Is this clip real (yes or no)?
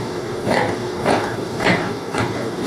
no